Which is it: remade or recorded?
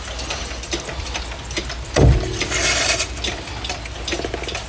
recorded